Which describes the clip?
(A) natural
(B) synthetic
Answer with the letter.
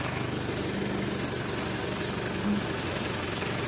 A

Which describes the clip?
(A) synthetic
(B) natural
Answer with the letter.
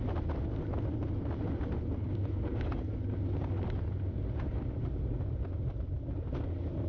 B